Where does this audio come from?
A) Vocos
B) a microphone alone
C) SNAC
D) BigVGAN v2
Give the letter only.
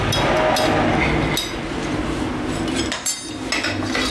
B